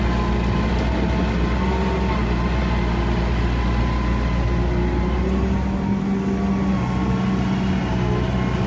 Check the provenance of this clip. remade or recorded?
recorded